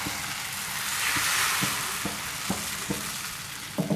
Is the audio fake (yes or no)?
no